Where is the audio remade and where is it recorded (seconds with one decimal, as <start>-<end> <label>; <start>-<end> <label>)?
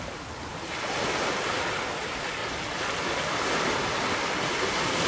0.0-2.4 recorded; 2.4-3.5 remade; 3.5-5.1 recorded